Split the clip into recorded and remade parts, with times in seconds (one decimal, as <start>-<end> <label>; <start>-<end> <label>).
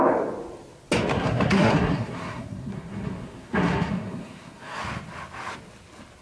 0.0-1.1 recorded; 1.1-4.8 remade; 4.8-6.2 recorded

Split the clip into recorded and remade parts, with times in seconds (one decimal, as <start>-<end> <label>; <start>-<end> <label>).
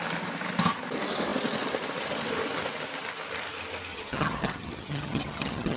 0.0-3.9 recorded; 3.9-5.8 remade